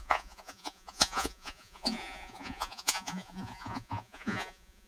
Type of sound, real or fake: fake